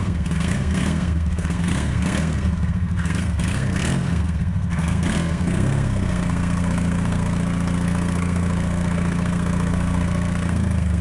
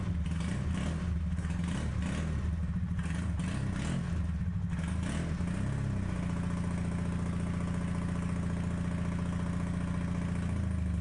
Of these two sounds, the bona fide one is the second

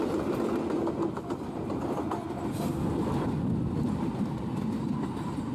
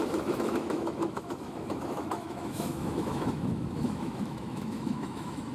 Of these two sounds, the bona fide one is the first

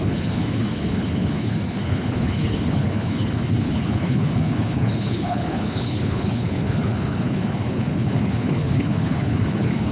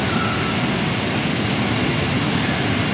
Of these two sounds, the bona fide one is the second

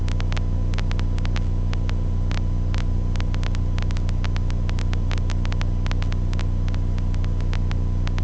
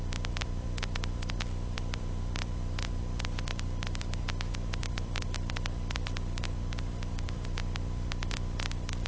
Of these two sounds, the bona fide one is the first